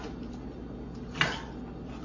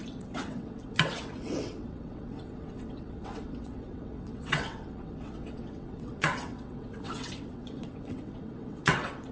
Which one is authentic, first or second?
first